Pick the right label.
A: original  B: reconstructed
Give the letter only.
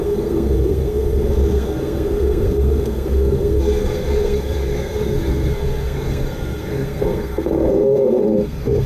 B